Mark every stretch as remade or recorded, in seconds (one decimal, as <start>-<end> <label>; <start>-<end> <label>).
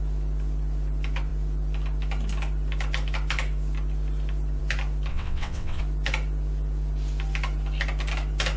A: 0.0-5.1 recorded; 5.1-5.8 remade; 5.8-8.6 recorded